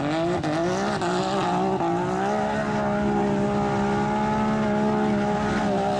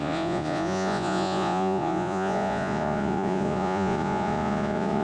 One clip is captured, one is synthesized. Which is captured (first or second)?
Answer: first